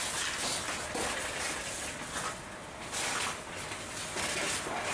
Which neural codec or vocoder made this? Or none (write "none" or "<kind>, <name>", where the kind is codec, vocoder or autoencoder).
none